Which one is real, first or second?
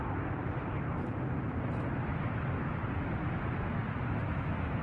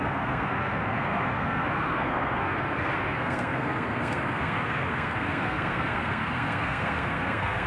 first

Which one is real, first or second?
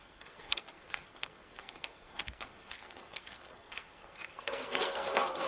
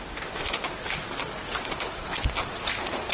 second